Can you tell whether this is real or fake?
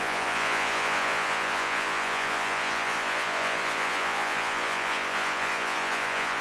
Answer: fake